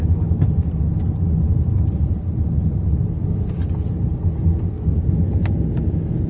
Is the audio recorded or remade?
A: recorded